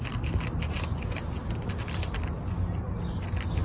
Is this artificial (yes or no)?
no